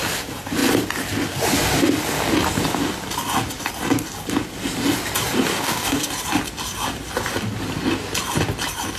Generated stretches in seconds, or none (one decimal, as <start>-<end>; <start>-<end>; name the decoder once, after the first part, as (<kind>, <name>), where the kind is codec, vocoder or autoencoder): 5.5-6.1 (codec, DAC)